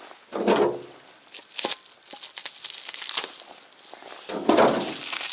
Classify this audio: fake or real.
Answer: real